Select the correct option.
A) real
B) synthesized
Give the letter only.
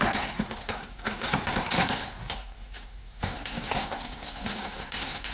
B